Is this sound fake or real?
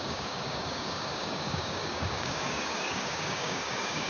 fake